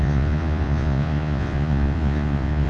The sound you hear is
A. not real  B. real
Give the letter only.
A